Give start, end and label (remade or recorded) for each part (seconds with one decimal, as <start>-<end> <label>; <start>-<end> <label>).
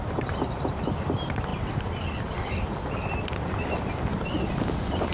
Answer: 0.0-5.1 remade